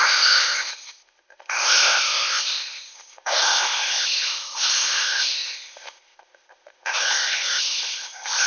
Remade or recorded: remade